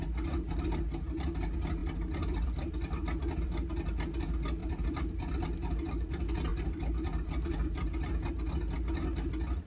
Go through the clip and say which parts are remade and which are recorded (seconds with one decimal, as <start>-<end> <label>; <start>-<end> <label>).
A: 0.0-1.8 recorded; 1.8-3.9 remade; 3.9-4.6 recorded; 4.6-5.3 remade; 5.3-6.5 recorded; 6.5-8.3 remade; 8.3-9.7 recorded